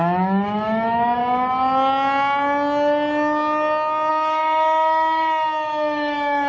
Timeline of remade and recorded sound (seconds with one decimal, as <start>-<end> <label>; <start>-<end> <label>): 0.0-1.2 remade; 1.2-4.1 recorded; 4.1-6.5 remade